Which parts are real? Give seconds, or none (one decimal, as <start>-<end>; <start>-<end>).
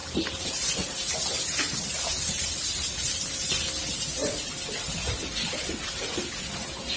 0.0-7.0